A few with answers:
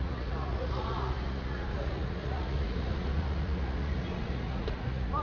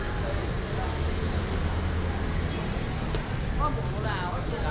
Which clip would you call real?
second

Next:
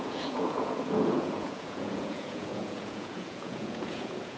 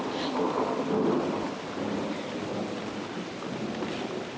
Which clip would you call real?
second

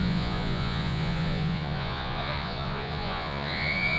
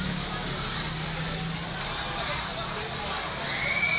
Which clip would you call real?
second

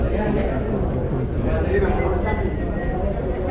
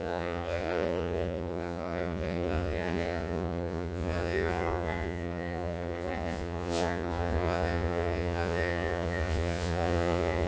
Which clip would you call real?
first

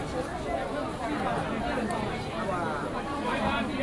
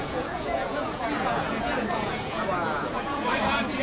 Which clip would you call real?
first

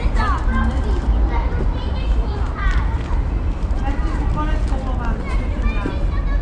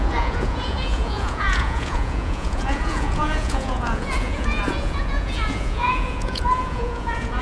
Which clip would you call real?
first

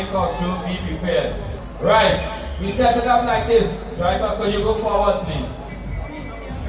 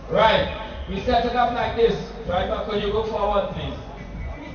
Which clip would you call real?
first